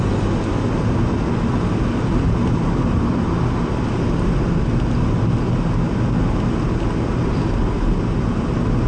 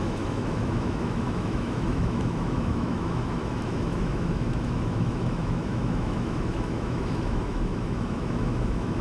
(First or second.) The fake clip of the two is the second